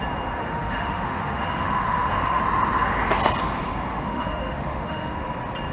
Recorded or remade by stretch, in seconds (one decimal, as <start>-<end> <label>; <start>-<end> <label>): 0.0-0.4 recorded; 0.4-2.4 remade; 2.4-3.9 recorded; 3.9-5.1 remade; 5.1-5.7 recorded